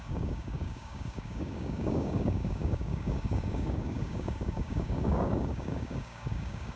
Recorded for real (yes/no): no